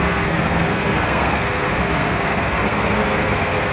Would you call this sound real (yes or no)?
no